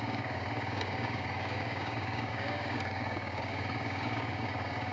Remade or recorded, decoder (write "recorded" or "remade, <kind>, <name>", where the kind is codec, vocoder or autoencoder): remade, codec, DAC